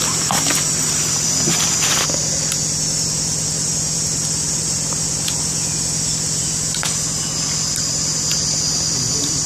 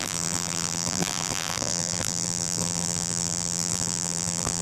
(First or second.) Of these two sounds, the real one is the first